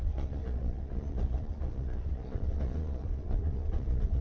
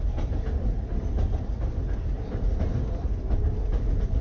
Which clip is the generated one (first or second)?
first